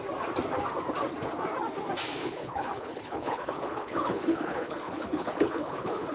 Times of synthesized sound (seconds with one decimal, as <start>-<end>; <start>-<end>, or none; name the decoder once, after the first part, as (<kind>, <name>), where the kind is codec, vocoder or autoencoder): 2.2-6.1 (codec, HILCodec)